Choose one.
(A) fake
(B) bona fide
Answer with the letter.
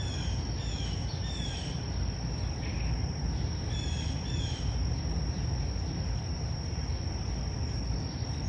B